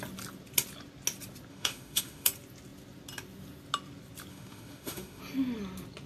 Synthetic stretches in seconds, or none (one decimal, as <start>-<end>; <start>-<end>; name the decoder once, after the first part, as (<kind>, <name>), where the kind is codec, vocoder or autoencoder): 1.5-2.3 (autoencoder, DAC-VAE); 4.3-5.2